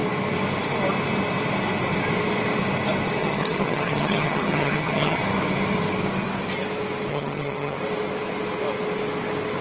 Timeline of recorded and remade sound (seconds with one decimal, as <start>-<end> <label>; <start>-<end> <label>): 0.0-3.2 recorded; 3.2-5.2 remade; 5.2-7.1 recorded; 7.1-7.8 remade; 7.8-9.6 recorded